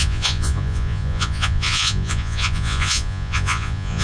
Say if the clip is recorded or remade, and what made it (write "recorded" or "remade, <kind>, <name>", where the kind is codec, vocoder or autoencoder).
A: remade, vocoder, Vocos